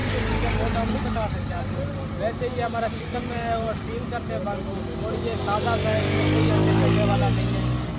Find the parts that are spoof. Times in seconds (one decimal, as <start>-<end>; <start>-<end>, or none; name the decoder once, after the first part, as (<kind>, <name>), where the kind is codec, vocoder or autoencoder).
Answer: 3.1-4.3 (vocoder, BigVGAN v2)

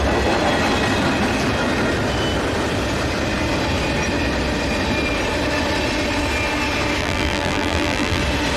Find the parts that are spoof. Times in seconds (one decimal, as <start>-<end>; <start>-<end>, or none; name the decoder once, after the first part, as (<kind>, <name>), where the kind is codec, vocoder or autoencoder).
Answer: 7.0-8.2 (vocoder, BigVGAN v2)

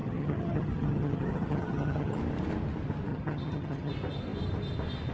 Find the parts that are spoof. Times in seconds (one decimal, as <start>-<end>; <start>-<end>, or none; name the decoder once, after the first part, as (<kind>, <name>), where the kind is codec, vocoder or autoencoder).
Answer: 0.0-2.2 (vocoder, HiFi-GAN); 3.1-3.9

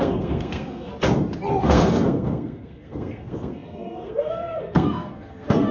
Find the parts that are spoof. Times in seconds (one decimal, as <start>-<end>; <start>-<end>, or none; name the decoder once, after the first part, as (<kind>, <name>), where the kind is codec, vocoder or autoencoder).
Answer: 0.0-0.9 (codec, SNAC); 1.6-5.7

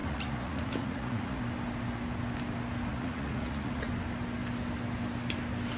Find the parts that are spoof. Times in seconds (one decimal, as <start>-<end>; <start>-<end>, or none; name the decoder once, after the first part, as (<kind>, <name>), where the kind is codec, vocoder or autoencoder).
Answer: 0.0-1.4 (vocoder, Vocos); 2.9-3.9